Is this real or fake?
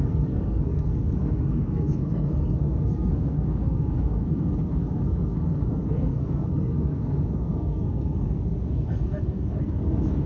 fake